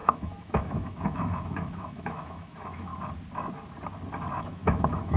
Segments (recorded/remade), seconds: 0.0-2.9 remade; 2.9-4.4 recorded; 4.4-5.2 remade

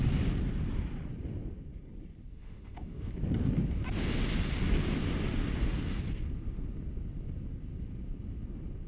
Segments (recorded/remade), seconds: 0.0-2.3 recorded; 2.3-3.1 remade; 3.1-8.9 recorded

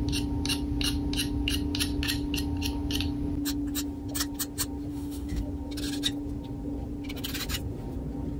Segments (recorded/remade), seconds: 0.0-4.9 recorded; 4.9-5.4 remade; 5.4-8.4 recorded

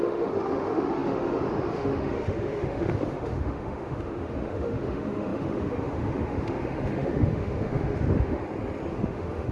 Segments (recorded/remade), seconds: 0.0-8.4 remade; 8.4-8.9 recorded; 8.9-9.5 remade

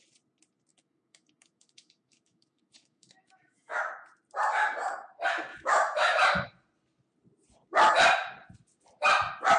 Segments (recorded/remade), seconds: 0.0-0.7 recorded; 0.7-3.8 remade; 3.8-5.5 recorded; 5.5-6.2 remade; 6.2-9.6 recorded